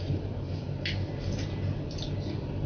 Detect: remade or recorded recorded